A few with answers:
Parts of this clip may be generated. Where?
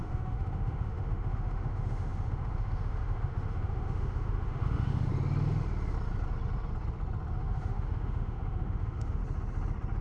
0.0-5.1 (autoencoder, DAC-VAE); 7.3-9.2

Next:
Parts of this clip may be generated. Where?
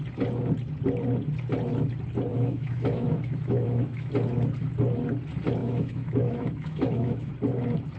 2.3-4.1 (autoencoder, DAC-VAE); 5.6-7.3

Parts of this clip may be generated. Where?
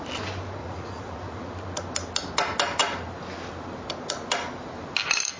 0.6-1.5 (vocoder, Vocos)